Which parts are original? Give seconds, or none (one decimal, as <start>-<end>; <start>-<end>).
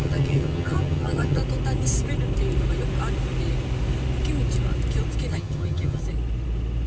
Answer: 1.4-5.3; 6.0-6.9